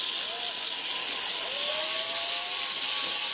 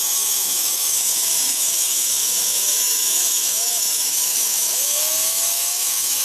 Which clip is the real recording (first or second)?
first